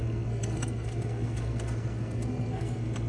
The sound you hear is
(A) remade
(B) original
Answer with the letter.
A